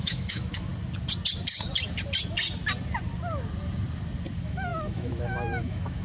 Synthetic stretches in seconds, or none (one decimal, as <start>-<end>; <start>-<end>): 0.0-0.7; 4.3-6.0